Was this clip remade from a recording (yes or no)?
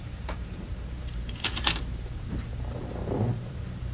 yes